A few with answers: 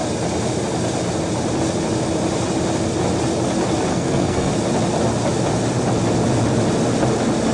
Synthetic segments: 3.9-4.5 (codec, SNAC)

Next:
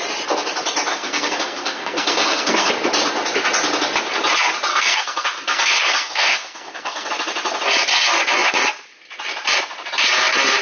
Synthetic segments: 0.9-2.7 (codec, SNAC); 4.7-7.1

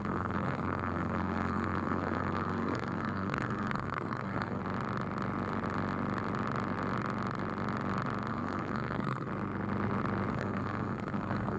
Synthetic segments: 0.0-4.6 (codec, SNAC); 8.3-9.3; 10.3-11.6

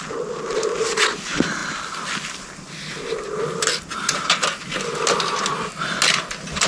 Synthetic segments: none

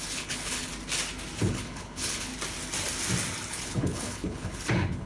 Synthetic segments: 0.0-0.7 (codec, HILCodec); 1.4-2.3; 3.5-5.1

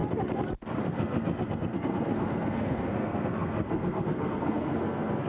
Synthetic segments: 0.8-5.3 (codec, SNAC)

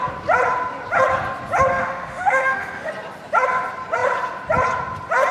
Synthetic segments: 1.7-2.9 (autoencoder, DAC-VAE)